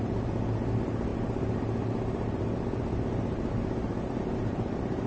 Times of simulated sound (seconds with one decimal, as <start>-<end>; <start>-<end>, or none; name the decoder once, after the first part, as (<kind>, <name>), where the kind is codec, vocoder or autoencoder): none